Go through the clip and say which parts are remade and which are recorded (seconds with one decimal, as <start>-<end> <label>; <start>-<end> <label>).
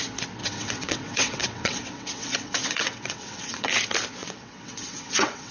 0.0-0.4 recorded; 0.4-3.7 remade; 3.7-4.2 recorded; 4.2-5.5 remade